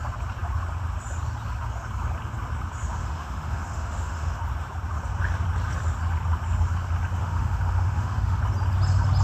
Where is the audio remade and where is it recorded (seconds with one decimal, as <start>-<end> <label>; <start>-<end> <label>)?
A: 0.0-3.0 recorded; 3.0-4.4 remade; 4.4-7.2 recorded; 7.2-8.4 remade; 8.4-9.2 recorded